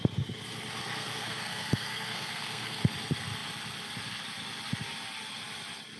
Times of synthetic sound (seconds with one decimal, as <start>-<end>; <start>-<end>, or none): 0.8-2.8